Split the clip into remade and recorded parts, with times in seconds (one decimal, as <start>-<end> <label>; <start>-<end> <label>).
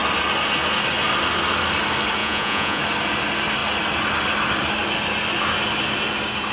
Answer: 0.0-2.2 recorded; 2.2-2.8 remade; 2.8-6.5 recorded